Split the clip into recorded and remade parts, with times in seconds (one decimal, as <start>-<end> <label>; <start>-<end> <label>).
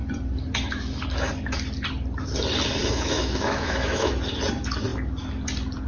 0.0-2.8 recorded; 2.8-4.1 remade; 4.1-5.9 recorded